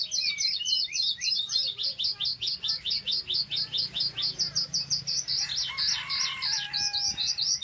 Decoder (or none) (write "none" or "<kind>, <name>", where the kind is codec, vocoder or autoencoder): none